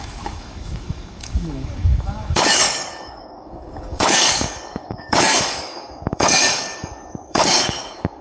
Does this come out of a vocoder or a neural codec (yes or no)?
yes